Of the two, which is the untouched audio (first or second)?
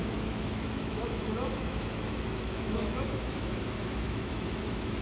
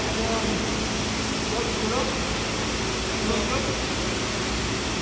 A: second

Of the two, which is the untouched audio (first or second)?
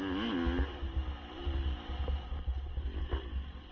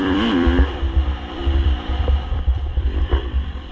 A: first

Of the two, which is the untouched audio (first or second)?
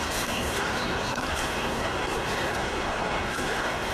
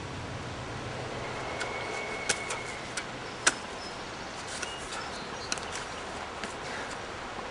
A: second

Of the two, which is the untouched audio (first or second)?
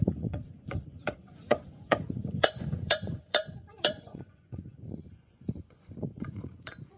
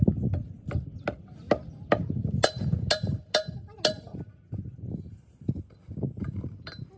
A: second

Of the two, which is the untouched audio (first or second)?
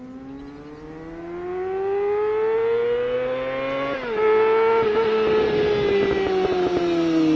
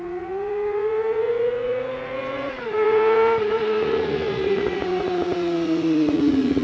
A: first